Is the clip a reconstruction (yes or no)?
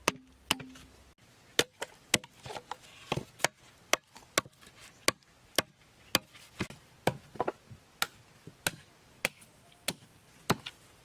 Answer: no